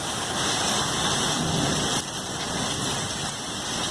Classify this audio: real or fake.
real